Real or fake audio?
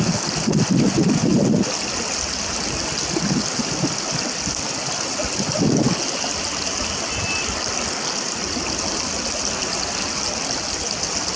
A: real